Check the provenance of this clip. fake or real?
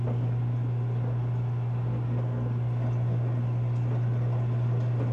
real